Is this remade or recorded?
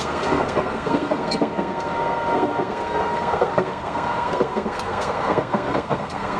remade